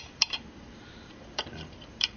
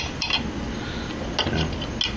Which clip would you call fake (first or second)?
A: first